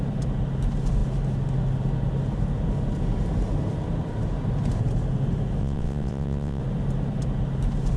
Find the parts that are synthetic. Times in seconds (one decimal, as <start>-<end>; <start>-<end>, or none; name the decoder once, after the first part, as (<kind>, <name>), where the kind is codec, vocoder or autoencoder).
5.6-6.6 (vocoder, WaveNeXt)